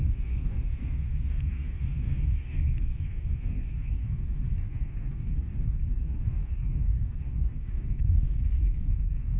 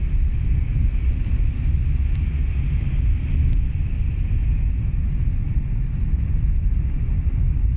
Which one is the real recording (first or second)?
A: second